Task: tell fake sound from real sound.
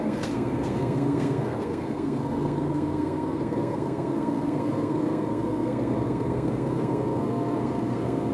fake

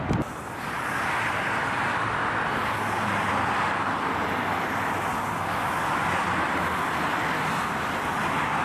real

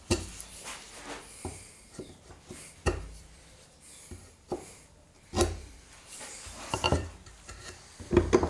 fake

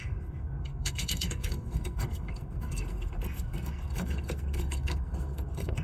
fake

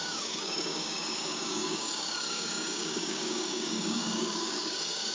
fake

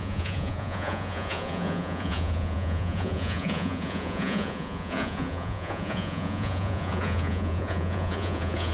fake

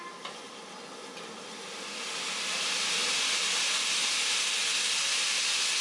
real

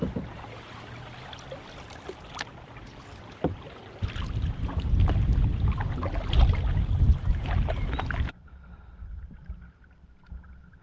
real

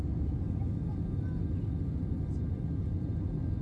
real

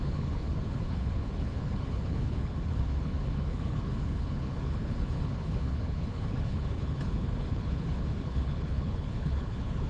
fake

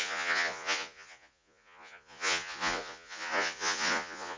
fake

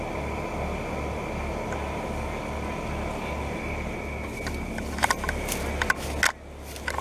real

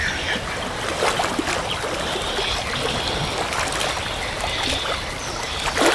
real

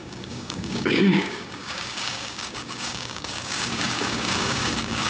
fake